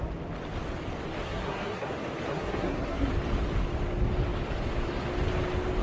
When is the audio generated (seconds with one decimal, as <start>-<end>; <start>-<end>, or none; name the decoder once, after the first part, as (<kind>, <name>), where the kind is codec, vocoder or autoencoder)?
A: 1.2-1.9 (codec, SNAC); 2.3-3.1